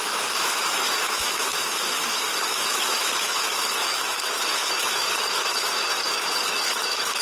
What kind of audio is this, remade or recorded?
remade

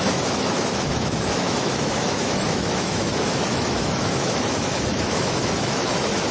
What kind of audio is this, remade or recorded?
remade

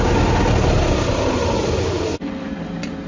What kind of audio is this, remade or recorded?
recorded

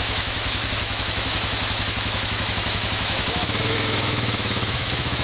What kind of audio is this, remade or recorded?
remade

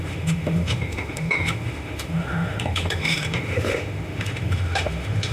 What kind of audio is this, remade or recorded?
remade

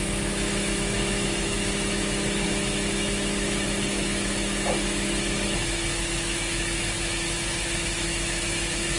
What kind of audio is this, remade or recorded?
remade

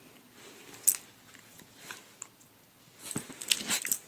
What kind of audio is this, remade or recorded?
recorded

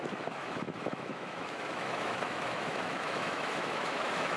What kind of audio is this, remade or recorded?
remade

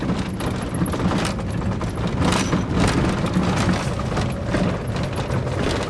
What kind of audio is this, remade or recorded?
recorded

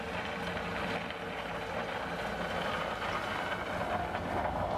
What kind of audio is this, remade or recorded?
recorded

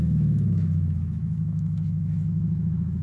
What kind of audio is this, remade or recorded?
remade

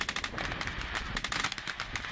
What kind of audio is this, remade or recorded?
recorded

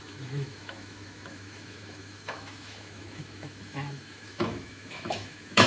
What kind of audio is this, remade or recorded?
remade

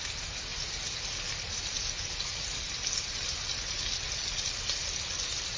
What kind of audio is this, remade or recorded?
recorded